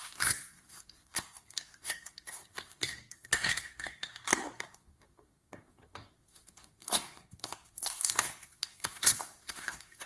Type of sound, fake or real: fake